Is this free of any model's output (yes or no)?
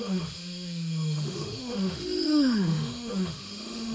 no